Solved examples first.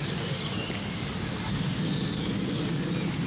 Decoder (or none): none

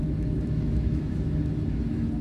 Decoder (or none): autoencoder, DAC-VAE